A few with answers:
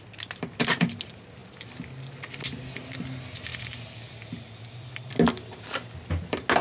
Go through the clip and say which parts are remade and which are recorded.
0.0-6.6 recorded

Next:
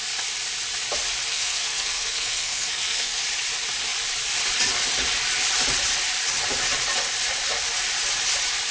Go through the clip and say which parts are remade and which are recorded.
0.0-1.3 recorded; 1.3-3.2 remade; 3.2-8.7 recorded

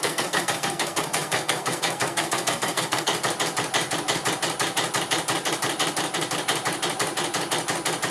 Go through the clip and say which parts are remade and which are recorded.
0.0-3.1 remade; 3.1-8.1 recorded

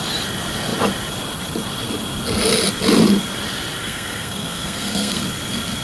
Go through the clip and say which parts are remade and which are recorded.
0.0-3.8 recorded; 3.8-5.2 remade; 5.2-5.8 recorded

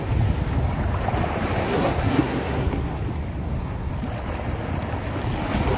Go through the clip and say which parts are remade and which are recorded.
0.0-1.6 recorded; 1.6-3.0 remade; 3.0-3.4 recorded; 3.4-3.9 remade; 3.9-5.8 recorded

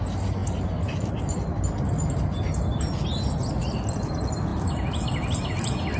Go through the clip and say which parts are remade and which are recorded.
0.0-6.0 recorded